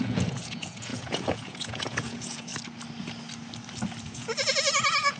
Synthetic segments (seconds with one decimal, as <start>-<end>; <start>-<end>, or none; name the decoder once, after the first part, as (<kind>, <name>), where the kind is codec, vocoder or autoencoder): 0.0-2.5 (vocoder, Vocos); 4.0-5.2